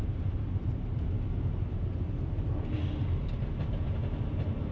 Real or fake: real